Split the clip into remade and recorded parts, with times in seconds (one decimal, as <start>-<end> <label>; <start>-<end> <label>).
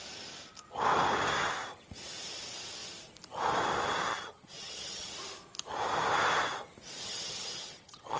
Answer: 0.0-4.1 recorded; 4.1-5.1 remade; 5.1-7.0 recorded; 7.0-8.2 remade